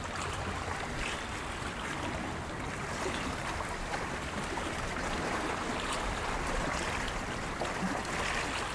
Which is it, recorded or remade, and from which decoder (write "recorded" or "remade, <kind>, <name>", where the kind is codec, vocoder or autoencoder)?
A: recorded